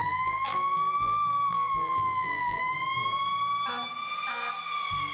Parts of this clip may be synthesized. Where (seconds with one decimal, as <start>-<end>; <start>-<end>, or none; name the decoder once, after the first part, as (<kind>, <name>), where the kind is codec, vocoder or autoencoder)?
0.0-2.6 (vocoder, BigVGAN v2)